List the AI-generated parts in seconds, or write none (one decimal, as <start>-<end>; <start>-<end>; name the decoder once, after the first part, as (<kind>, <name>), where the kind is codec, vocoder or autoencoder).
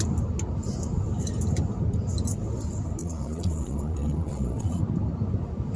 3.0-4.8 (vocoder, Vocos)